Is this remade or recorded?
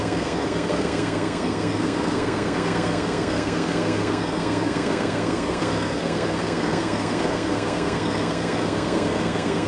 remade